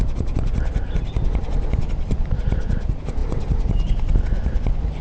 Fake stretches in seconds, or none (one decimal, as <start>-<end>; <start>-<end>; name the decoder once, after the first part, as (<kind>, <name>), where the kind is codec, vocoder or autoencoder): none